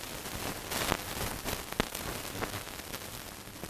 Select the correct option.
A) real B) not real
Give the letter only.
A